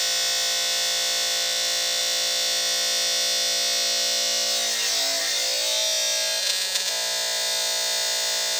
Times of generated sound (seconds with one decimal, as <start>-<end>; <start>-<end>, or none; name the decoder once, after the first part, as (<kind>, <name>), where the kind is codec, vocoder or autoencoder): 6.4-6.9 (vocoder, Vocos)